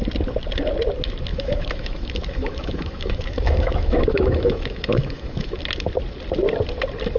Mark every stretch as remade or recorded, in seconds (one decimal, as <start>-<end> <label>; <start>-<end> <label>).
0.0-1.3 recorded; 1.3-5.6 remade; 5.6-7.2 recorded